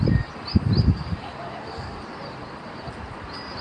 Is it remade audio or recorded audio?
remade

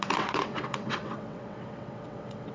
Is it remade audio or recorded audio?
remade